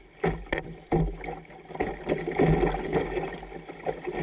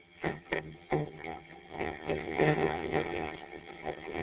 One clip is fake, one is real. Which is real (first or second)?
first